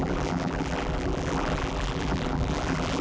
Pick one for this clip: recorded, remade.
remade